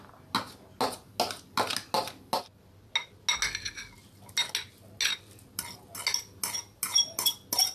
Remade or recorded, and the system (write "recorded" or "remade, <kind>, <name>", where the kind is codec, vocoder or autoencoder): recorded